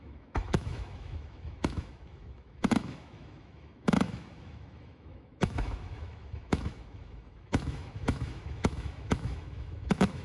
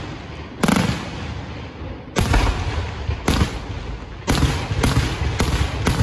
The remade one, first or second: first